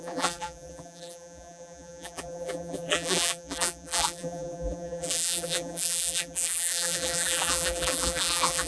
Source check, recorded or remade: remade